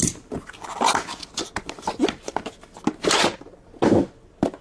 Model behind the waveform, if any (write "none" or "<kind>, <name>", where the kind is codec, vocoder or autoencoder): none